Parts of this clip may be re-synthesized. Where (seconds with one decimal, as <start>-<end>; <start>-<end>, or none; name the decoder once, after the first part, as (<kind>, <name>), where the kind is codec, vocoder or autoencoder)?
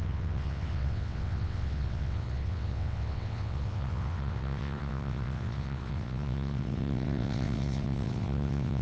0.0-8.8 (vocoder, WaveNeXt)